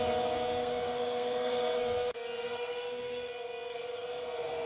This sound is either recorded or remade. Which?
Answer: remade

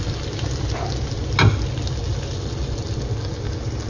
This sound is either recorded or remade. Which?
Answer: recorded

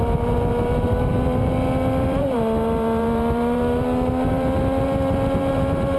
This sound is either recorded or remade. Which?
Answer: remade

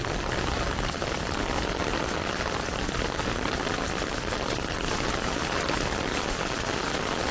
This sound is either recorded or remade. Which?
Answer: recorded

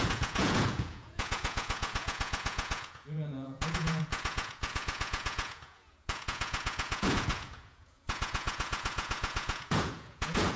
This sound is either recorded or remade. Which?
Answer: remade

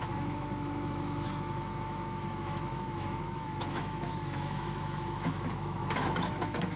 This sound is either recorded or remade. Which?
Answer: remade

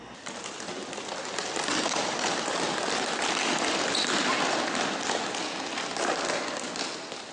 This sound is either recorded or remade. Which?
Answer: recorded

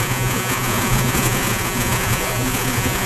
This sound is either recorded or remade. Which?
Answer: remade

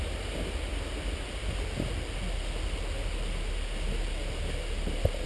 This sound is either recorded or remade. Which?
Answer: recorded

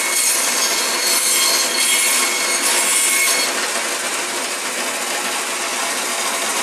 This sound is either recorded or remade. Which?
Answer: recorded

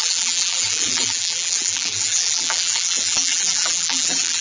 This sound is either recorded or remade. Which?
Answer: remade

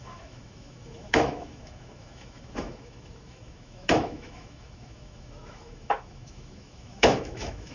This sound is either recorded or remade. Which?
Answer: remade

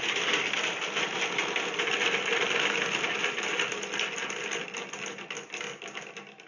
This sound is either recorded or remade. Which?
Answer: recorded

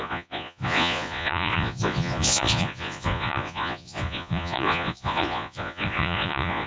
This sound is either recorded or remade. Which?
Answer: remade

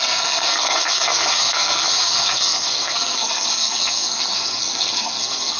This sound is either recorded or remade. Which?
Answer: remade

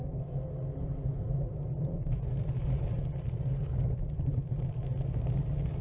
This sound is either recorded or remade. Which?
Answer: recorded